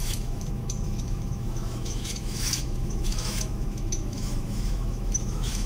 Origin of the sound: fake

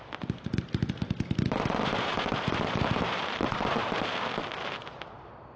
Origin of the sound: fake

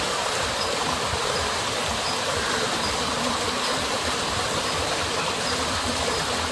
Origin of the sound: fake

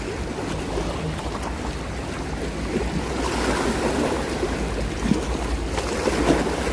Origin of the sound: real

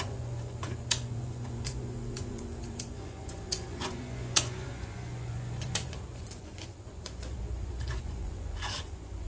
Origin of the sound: fake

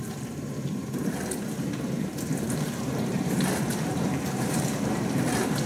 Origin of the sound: fake